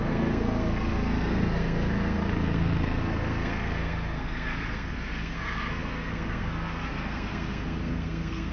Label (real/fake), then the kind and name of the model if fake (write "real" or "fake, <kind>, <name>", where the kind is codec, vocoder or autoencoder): fake, codec, SNAC